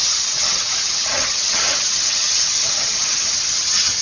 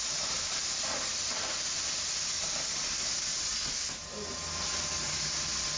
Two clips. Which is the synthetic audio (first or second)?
first